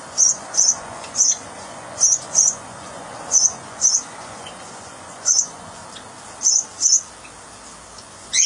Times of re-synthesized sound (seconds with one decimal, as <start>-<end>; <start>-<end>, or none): 0.0-5.8; 8.0-8.5